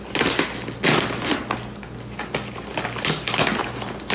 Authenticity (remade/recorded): recorded